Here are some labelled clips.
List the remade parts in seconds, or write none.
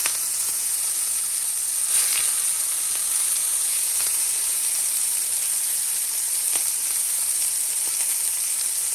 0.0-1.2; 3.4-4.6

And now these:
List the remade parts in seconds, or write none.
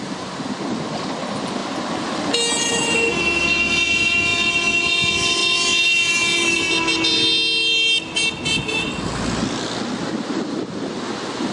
none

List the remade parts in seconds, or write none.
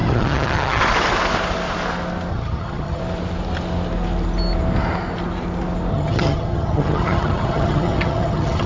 0.0-0.8; 2.3-3.0; 5.9-8.7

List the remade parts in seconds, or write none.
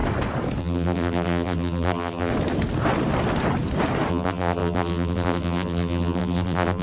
0.6-2.3; 4.1-6.8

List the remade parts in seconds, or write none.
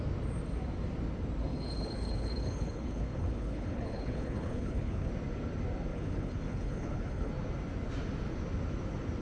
1.5-5.1; 5.9-7.3